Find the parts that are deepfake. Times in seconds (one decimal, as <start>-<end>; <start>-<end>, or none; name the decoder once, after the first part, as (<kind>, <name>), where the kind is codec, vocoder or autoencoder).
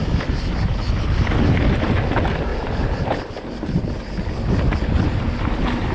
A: 2.5-3.3 (vocoder, BigVGAN v2)